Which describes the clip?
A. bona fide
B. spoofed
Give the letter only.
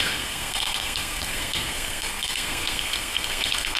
B